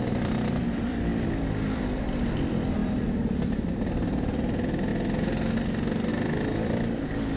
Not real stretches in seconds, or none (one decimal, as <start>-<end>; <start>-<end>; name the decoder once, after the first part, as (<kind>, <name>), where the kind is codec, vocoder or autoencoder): 0.0-2.8 (vocoder, BigVGAN v2); 3.9-4.9; 6.1-7.4